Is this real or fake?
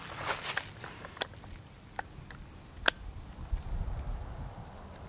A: real